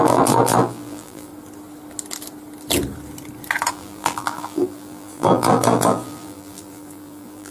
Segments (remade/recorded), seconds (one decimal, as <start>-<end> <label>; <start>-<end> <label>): 0.0-1.3 remade; 1.3-3.7 recorded; 3.7-7.5 remade